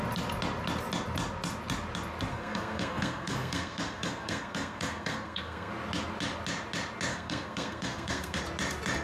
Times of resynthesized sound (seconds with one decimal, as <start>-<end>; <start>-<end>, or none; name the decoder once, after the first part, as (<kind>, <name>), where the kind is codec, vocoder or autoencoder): 2.3-5.7 (codec, SNAC); 7.1-8.4